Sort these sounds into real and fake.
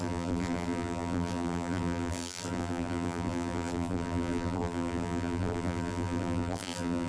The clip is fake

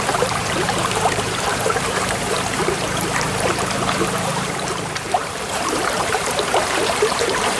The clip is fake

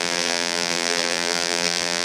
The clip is fake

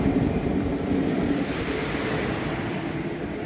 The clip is real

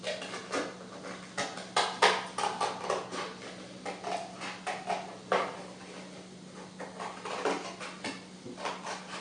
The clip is real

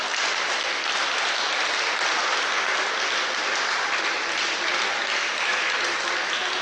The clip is real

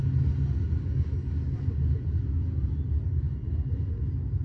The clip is real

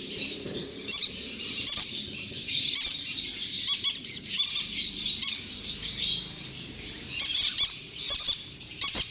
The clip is fake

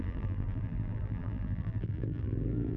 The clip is fake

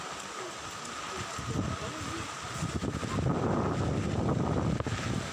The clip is real